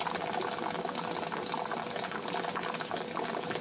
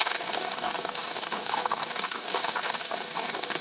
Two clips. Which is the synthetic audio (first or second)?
second